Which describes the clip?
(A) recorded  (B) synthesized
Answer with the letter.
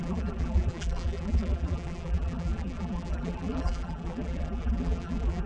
B